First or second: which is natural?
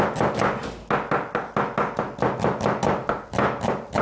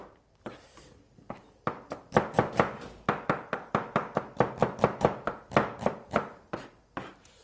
first